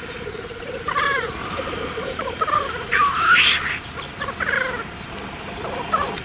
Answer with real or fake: real